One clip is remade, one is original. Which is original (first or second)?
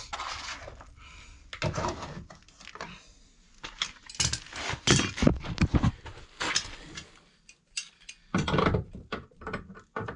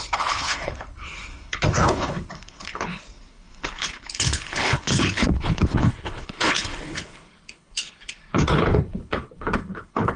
first